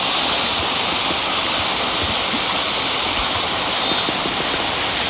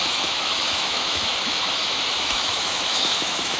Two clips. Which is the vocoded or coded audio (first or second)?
second